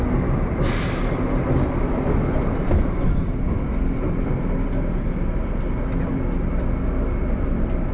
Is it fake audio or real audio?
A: real